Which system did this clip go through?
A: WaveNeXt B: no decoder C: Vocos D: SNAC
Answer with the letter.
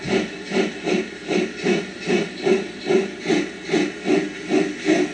B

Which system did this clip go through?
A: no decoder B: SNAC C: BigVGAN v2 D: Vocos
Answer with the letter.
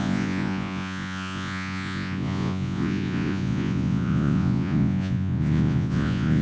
D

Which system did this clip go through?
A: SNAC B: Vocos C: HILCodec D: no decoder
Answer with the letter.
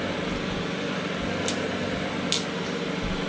D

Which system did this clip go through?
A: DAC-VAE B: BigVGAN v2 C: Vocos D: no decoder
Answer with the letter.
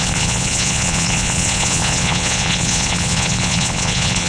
C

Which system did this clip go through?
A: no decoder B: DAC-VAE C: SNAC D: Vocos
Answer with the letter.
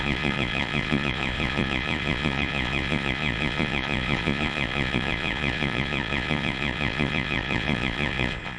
D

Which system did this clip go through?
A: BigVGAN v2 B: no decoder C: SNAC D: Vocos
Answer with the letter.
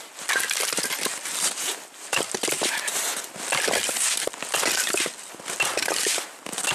B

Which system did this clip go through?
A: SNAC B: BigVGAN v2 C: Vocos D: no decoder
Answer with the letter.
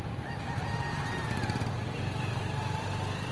D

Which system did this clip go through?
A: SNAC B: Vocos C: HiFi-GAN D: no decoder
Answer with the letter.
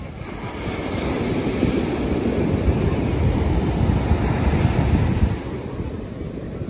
D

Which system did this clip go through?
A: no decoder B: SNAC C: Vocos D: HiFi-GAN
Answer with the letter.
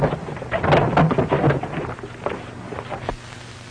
A